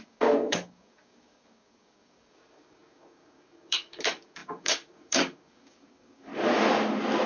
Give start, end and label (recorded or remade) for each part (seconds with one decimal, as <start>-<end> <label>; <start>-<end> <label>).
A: 0.0-6.3 remade; 6.3-7.3 recorded